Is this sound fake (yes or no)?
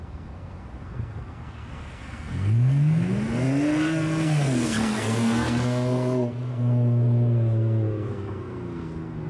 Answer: yes